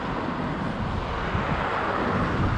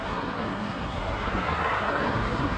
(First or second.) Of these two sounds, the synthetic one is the second